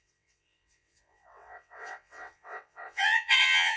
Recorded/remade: remade